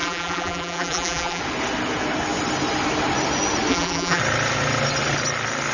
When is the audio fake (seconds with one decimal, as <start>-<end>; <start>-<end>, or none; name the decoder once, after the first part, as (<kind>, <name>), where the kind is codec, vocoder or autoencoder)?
0.0-1.4 (vocoder, BigVGAN v2); 3.7-4.2